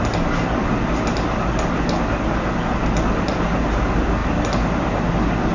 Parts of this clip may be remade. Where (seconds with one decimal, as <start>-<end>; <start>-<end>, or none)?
none